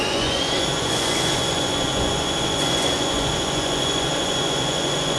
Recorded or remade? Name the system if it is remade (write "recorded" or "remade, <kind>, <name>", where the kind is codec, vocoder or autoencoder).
remade, vocoder, Vocos